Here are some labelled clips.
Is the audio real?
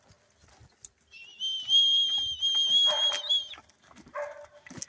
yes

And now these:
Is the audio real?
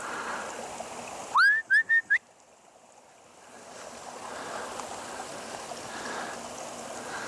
yes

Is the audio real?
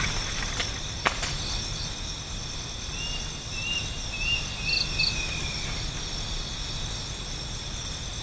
yes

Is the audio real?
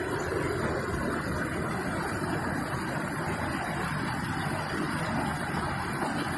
yes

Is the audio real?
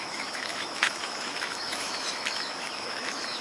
no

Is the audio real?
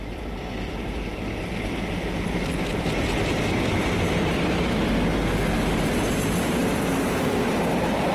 yes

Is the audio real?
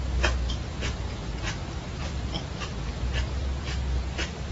yes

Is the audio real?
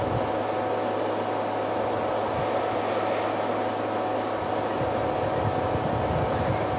yes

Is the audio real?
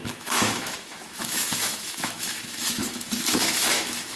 no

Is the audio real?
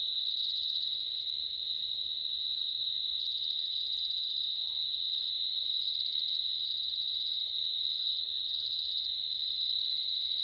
yes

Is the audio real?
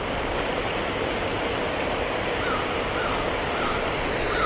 yes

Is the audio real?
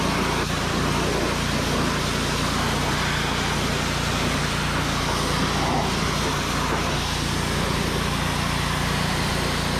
yes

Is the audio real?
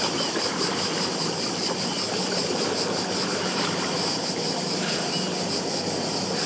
yes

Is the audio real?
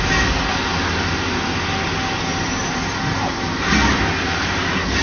yes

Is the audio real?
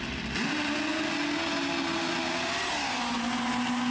yes